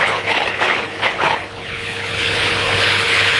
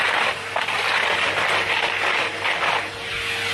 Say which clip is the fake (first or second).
first